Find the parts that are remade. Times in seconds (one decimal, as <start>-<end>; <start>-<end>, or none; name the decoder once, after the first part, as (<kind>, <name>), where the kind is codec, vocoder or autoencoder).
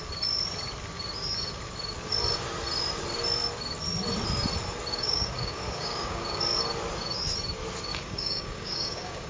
4.9-6.4 (codec, DAC); 7.9-9.3